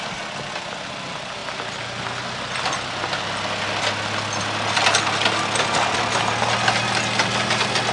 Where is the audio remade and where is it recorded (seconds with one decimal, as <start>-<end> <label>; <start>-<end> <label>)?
0.0-7.9 recorded